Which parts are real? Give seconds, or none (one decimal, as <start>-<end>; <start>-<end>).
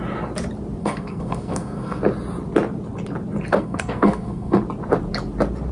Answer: 0.0-0.8; 2.0-3.5; 4.6-5.7